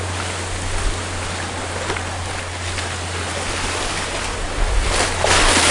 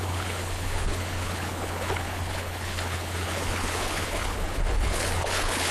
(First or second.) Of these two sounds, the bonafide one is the first